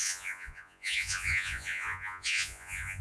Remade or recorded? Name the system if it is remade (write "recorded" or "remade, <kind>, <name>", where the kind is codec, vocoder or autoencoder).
remade, vocoder, Vocos